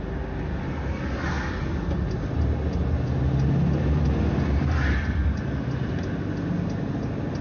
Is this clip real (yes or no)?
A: yes